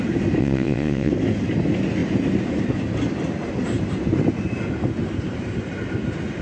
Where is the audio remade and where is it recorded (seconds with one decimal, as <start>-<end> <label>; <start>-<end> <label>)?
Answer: 0.0-0.4 recorded; 0.4-1.1 remade; 1.1-6.4 recorded